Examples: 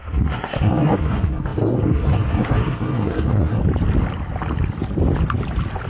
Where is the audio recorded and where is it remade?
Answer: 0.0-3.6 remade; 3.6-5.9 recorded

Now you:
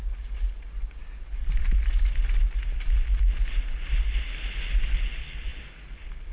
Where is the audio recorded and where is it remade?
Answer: 0.0-6.3 recorded